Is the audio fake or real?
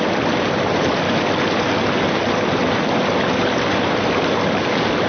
real